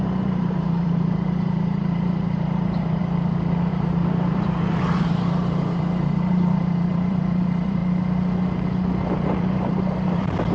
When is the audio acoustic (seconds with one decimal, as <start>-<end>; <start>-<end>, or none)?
3.0-3.7; 7.8-9.0